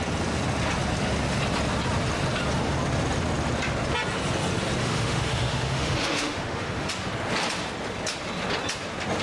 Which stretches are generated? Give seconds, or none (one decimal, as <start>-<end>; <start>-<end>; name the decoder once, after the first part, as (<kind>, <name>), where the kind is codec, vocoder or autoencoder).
4.8-6.9 (autoencoder, DAC-VAE)